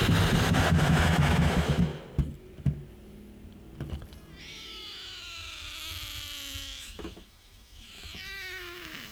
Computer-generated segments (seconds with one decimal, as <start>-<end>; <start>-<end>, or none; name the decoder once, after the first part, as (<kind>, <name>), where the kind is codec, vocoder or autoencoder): 0.8-1.9 (autoencoder, DAC-VAE); 4.4-9.1